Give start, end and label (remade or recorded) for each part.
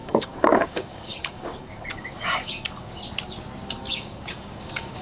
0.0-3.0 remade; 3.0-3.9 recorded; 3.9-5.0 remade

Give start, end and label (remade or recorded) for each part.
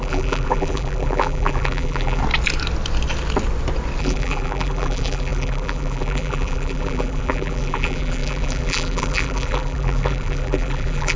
0.0-2.2 remade; 2.2-4.0 recorded; 4.0-11.2 remade